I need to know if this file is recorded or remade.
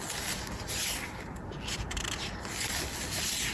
recorded